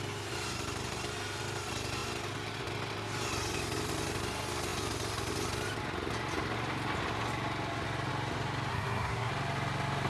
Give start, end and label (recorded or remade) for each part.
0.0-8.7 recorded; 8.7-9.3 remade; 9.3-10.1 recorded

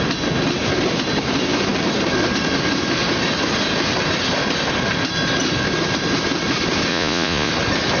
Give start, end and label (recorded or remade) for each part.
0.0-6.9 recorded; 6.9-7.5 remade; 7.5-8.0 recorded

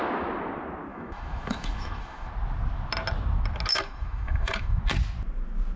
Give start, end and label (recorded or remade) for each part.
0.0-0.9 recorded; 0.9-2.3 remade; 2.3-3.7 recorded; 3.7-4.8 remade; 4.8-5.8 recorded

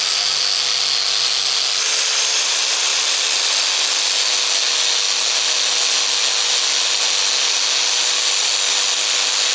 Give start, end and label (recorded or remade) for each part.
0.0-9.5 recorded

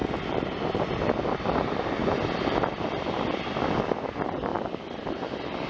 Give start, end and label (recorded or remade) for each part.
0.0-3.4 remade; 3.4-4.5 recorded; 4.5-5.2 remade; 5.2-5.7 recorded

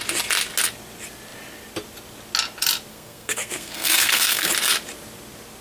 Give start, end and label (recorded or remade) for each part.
0.0-2.9 recorded; 2.9-4.5 remade; 4.5-5.6 recorded

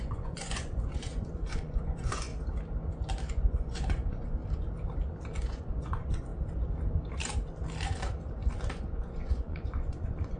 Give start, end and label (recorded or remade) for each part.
0.0-2.3 remade; 2.3-3.3 recorded; 3.3-4.4 remade; 4.4-5.4 recorded; 5.4-6.3 remade; 6.3-8.7 recorded; 8.7-10.4 remade